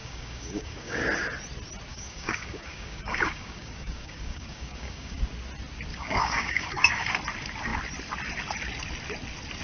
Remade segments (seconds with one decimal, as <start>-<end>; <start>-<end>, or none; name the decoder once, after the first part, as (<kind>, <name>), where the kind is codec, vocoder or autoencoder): 0.0-1.0 (codec, DAC); 1.9-5.2; 5.9-7.2